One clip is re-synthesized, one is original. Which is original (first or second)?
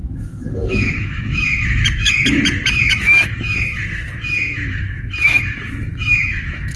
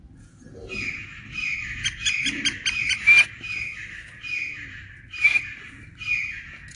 second